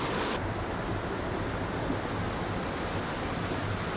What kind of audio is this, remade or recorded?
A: recorded